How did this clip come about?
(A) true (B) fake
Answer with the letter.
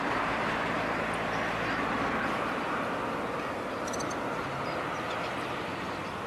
A